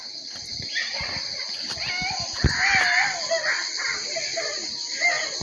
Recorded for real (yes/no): yes